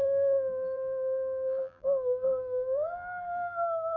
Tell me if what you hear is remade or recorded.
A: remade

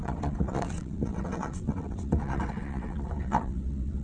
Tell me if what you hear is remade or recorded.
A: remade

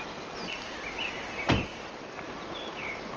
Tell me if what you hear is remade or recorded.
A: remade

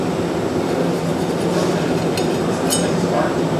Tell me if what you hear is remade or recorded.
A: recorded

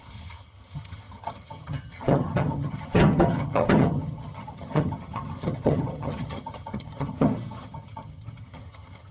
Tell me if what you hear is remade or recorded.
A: remade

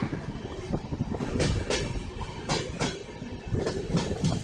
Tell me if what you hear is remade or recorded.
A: recorded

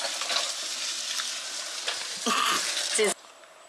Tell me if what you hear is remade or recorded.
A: recorded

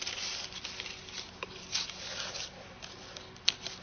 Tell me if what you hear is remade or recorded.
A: recorded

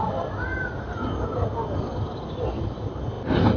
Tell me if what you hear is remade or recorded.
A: recorded